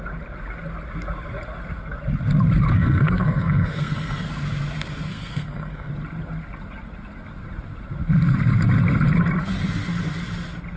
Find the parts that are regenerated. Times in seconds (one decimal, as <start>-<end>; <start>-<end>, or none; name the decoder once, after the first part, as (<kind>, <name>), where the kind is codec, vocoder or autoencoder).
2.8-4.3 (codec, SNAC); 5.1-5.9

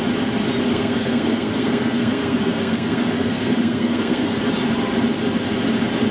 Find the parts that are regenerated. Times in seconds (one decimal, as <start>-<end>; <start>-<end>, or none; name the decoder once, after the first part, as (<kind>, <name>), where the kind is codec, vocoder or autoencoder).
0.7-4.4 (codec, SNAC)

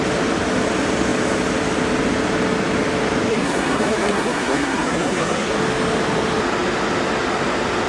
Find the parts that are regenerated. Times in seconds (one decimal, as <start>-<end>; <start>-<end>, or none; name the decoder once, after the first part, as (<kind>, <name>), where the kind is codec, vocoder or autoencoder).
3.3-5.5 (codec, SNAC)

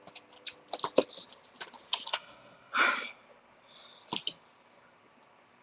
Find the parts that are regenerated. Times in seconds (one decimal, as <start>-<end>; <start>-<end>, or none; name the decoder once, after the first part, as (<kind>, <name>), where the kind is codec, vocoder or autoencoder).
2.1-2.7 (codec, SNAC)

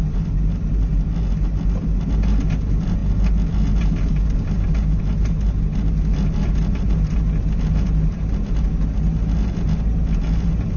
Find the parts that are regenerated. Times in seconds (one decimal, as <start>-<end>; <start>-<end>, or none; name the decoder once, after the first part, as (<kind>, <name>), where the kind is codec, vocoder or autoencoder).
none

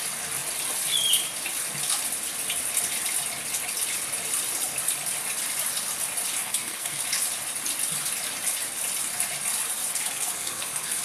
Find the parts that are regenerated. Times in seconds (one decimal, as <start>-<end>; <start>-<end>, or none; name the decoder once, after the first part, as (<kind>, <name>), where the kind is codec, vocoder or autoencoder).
6.4-7.0 (codec, SNAC); 9.9-11.0

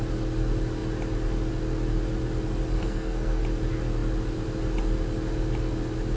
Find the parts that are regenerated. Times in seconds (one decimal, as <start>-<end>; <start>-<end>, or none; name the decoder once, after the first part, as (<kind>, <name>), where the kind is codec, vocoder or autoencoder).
2.7-3.4 (codec, SNAC)

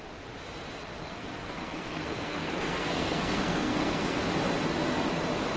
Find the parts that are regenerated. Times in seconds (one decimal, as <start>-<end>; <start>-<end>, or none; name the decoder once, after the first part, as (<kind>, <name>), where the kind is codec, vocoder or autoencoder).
1.0-4.2 (codec, SNAC)